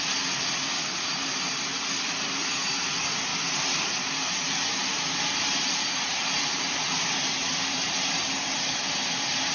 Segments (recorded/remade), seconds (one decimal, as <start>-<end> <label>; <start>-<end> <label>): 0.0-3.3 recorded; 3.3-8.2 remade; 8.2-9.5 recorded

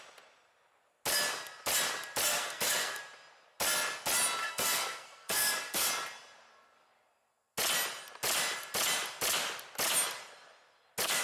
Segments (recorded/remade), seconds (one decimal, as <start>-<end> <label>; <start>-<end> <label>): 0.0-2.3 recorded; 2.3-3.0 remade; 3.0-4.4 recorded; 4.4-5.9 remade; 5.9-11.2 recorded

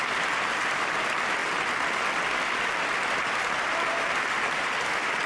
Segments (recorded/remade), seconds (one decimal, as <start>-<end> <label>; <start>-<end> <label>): 0.0-5.3 recorded

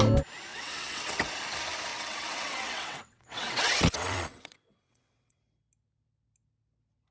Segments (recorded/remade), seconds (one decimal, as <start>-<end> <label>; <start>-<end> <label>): 0.0-0.5 recorded; 0.5-1.3 remade; 1.3-1.9 recorded; 1.9-5.4 remade; 5.4-7.1 recorded

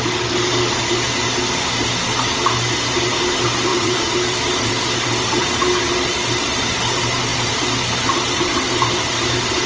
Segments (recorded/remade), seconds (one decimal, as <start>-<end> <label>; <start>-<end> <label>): 0.0-3.7 recorded; 3.7-4.7 remade; 4.7-9.7 recorded

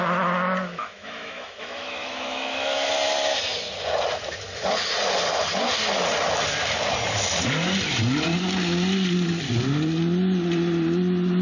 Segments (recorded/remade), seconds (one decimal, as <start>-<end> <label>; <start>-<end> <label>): 0.0-0.8 recorded; 0.8-2.9 remade; 2.9-11.4 recorded